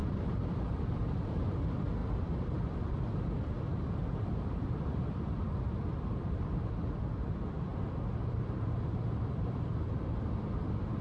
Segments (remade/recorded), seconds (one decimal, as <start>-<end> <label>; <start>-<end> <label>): 0.0-11.0 remade